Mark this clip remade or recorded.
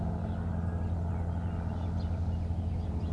recorded